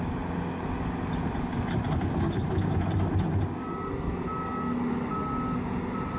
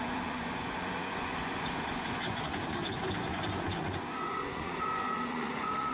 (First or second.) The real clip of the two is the first